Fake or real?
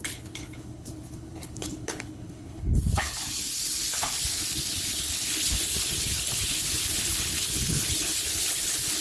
fake